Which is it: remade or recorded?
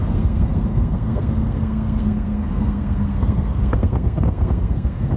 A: remade